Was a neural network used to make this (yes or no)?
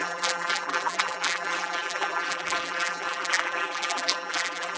yes